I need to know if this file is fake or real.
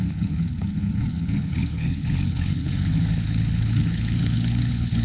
fake